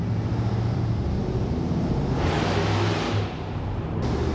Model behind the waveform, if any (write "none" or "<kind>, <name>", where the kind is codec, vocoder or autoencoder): vocoder, BigVGAN v2